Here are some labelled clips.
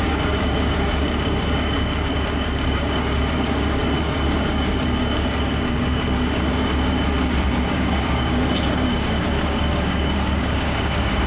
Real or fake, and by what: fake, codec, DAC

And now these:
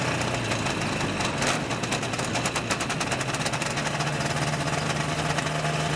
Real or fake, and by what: real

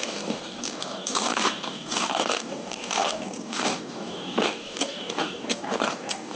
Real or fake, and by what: fake, codec, DAC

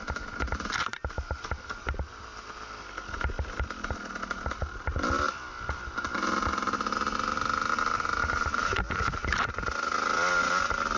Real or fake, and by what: real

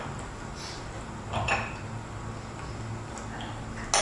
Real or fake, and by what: real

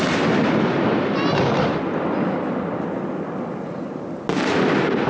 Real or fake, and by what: real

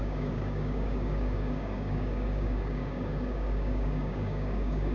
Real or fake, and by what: fake, codec, DAC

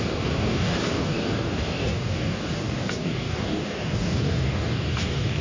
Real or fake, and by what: fake, codec, DAC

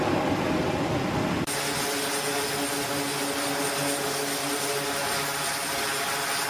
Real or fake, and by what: real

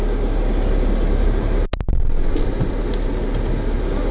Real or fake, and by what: real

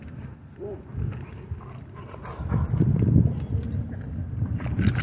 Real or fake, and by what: real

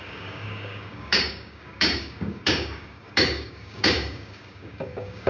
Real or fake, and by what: fake, codec, DAC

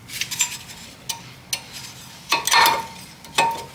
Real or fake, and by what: real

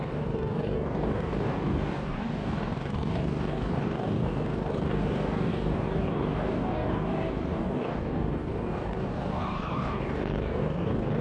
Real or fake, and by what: fake, codec, DAC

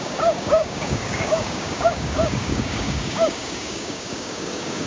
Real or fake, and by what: fake, codec, DAC